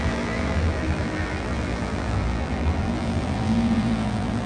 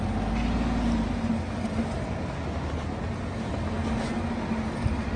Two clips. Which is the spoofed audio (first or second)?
first